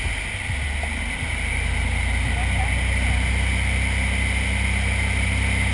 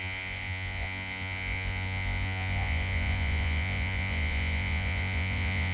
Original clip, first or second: first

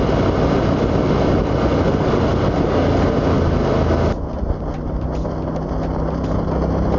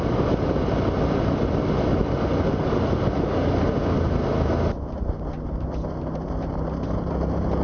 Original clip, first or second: first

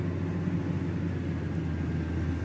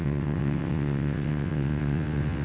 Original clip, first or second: first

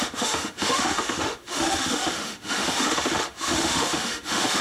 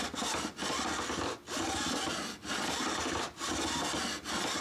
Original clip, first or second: second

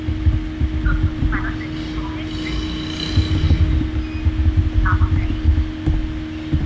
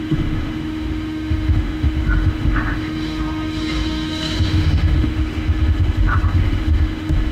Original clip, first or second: first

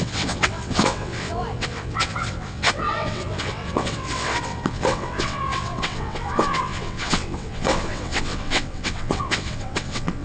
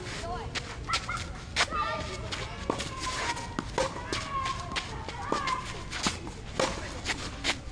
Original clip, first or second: second